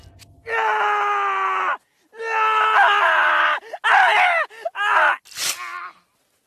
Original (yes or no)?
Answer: yes